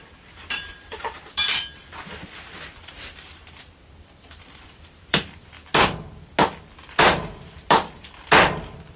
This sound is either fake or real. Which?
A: fake